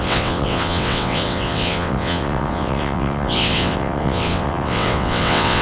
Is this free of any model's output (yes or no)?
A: no